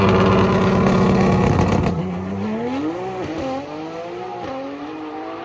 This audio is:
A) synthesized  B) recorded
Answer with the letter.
B